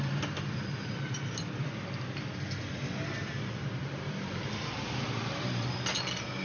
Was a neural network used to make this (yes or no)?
yes